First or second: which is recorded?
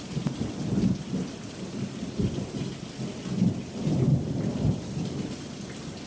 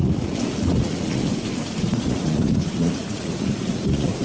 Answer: first